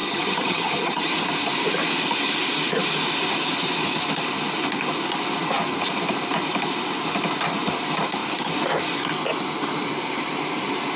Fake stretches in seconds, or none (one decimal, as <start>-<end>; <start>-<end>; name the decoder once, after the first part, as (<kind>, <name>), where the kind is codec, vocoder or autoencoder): 0.0-1.1 (vocoder, HiFi-GAN)